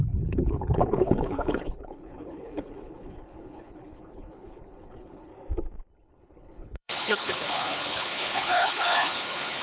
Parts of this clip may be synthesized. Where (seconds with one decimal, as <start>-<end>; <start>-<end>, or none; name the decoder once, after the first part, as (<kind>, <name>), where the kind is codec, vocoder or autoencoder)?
0.0-5.3 (codec, HILCodec); 5.9-9.6